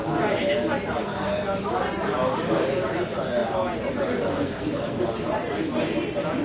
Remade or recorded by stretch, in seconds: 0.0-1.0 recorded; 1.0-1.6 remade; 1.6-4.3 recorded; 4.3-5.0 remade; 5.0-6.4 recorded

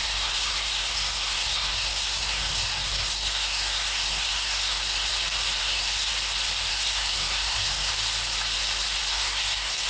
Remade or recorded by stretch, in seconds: 0.0-5.1 remade; 5.1-5.6 recorded; 5.6-6.1 remade; 6.1-6.7 recorded; 6.7-7.9 remade; 7.9-9.1 recorded; 9.1-9.9 remade

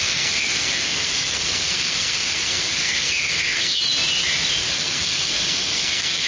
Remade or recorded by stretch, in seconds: 0.0-3.8 remade; 3.8-4.6 recorded; 4.6-6.3 remade

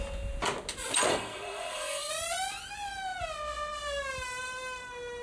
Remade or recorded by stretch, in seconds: 0.0-1.1 recorded; 1.1-2.1 remade; 2.1-5.2 recorded

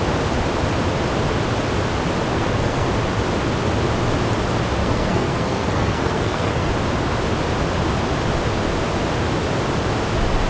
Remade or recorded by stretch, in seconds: 0.0-2.3 recorded; 2.3-2.9 remade; 2.9-4.8 recorded; 4.8-6.7 remade; 6.7-10.5 recorded

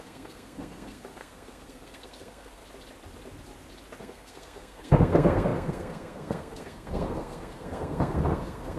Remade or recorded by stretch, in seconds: 0.0-2.6 remade; 2.6-4.0 recorded; 4.0-8.8 remade

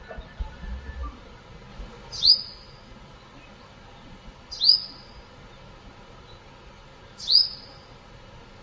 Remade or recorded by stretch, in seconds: 0.0-8.6 recorded